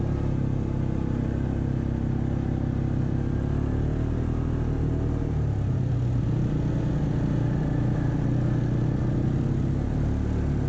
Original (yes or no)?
yes